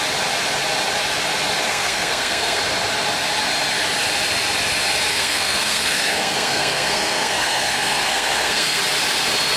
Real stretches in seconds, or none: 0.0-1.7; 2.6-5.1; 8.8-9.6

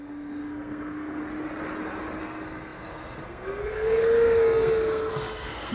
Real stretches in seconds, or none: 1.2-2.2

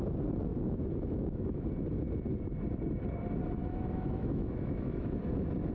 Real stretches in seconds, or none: 0.0-0.5; 1.7-3.6; 5.2-5.7

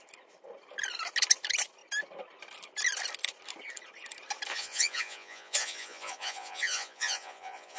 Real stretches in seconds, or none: 0.0-4.5

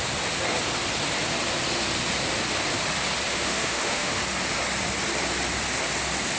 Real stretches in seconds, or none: 0.0-3.3; 4.1-6.4

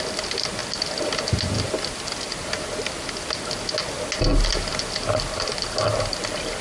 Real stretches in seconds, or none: 0.0-6.6